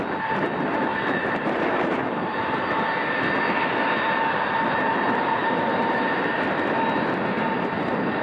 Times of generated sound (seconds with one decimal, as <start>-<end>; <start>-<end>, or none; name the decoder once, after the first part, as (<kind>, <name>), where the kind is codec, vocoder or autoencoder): 0.9-2.7 (vocoder, BigVGAN v2); 5.4-6.5